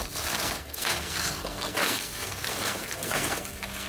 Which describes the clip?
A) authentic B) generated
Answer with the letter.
B